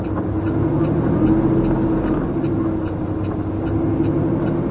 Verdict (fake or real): real